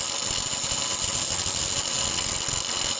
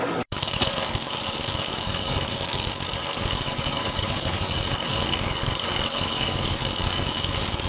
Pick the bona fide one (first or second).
first